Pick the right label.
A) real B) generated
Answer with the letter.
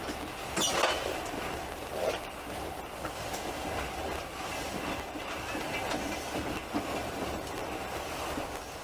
A